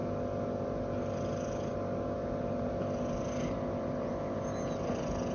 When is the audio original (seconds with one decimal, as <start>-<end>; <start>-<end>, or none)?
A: 0.0-5.3